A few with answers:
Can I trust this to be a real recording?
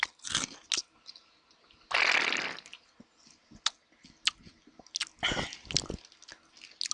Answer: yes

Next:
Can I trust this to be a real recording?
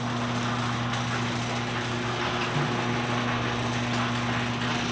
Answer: yes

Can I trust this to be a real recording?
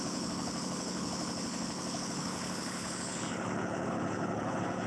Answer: no